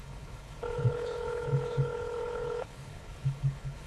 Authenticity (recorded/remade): remade